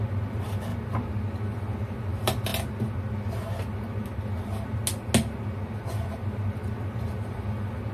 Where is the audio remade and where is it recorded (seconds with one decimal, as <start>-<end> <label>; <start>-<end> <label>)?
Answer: 0.0-7.9 recorded